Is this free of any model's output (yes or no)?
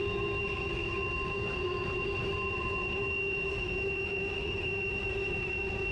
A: no